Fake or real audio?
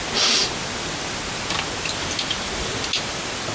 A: real